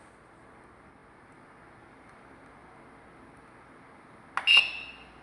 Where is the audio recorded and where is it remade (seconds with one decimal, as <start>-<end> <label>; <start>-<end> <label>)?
0.0-5.2 recorded